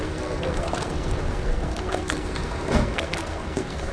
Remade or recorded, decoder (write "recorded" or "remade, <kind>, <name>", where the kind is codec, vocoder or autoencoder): remade, codec, SNAC